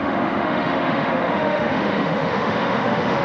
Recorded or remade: remade